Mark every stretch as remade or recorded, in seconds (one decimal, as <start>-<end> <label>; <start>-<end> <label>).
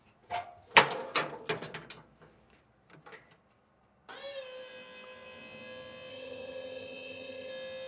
0.0-6.1 recorded; 6.1-7.5 remade; 7.5-7.9 recorded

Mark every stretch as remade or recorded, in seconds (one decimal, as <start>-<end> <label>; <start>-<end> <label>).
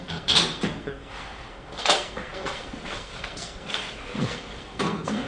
0.0-5.3 remade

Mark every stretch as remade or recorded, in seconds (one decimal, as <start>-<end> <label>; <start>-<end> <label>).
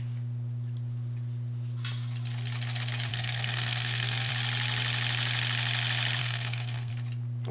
0.0-3.1 recorded; 3.1-4.3 remade; 4.3-6.2 recorded; 6.2-6.9 remade; 6.9-7.5 recorded